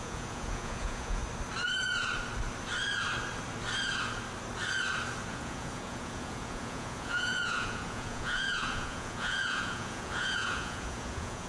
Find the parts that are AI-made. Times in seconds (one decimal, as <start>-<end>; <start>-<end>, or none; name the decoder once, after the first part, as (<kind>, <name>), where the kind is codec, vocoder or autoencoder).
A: 0.0-1.2 (vocoder, Vocos); 5.3-11.5